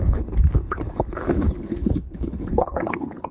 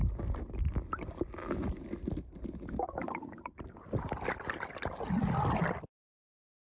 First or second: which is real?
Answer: second